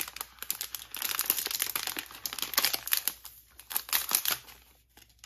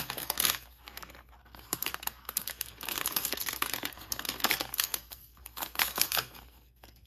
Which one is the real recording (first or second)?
first